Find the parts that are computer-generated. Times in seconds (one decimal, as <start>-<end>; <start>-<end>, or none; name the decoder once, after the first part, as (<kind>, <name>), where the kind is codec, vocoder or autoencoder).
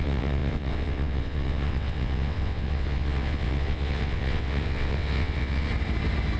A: 0.0-5.7 (vocoder, WaveNeXt)